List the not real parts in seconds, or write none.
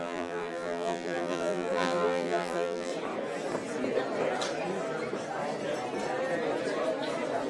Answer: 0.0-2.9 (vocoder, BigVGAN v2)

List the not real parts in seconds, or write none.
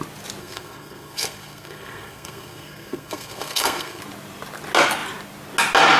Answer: 0.4-4.0 (codec, SNAC)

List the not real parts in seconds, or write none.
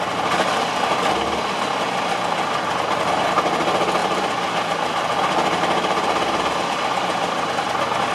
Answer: none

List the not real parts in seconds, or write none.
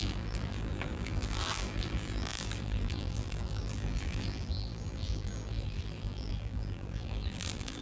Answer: 0.0-7.8 (vocoder, BigVGAN v2)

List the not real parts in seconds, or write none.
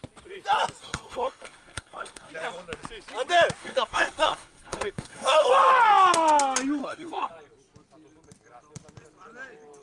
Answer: 0.8-2.3 (codec, SNAC); 3.6-5.5; 6.8-7.3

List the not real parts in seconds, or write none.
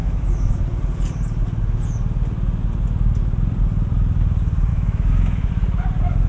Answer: 0.0-0.6 (autoencoder, DAC-VAE); 4.7-5.5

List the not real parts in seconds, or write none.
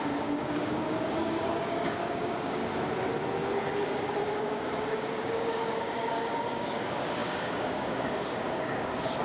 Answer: 0.0-2.6 (codec, DAC); 4.4-9.2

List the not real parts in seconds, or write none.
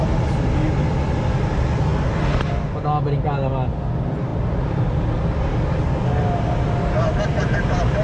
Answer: none